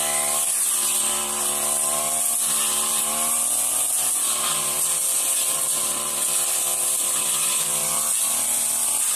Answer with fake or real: real